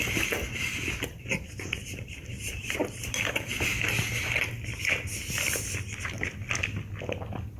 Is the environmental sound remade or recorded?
recorded